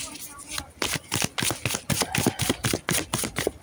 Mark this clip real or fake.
real